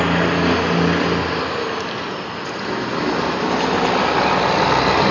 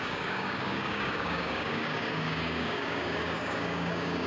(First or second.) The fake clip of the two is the second